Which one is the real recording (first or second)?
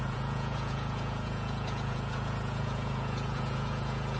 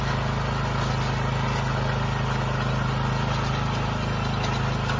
second